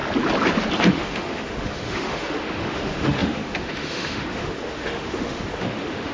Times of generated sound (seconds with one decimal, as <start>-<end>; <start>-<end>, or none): 0.9-6.1